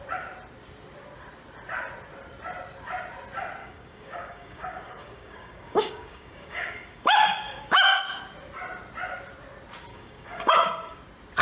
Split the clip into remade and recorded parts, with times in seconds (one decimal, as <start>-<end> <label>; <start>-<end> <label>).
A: 0.0-3.6 recorded; 3.6-8.0 remade; 8.0-9.9 recorded; 9.9-11.0 remade; 11.0-11.4 recorded